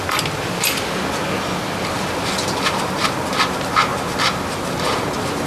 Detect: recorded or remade recorded